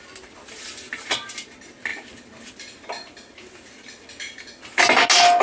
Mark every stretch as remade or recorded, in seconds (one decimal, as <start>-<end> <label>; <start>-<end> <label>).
0.0-5.4 recorded